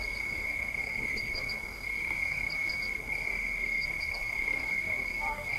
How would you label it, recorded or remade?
remade